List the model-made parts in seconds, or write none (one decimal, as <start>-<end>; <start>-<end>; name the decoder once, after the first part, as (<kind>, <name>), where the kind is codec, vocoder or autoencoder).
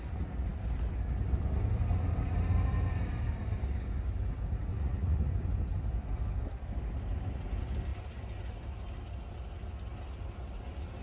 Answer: 4.7-5.3 (vocoder, Vocos)